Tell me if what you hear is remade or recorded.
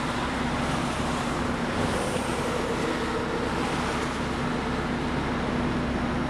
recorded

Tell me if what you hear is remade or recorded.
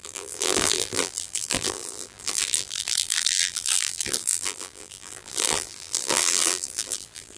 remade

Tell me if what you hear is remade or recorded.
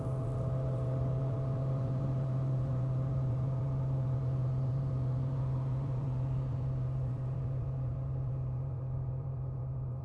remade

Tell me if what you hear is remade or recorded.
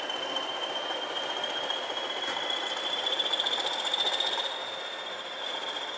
remade